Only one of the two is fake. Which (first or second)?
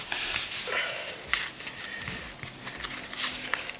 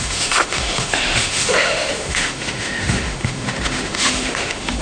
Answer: second